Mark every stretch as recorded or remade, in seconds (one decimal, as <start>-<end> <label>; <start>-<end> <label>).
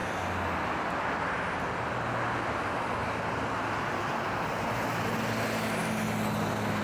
0.0-6.8 recorded